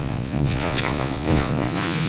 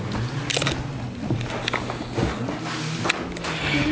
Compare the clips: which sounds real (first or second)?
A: second